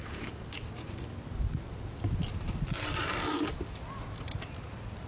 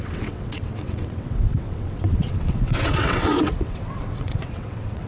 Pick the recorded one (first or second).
first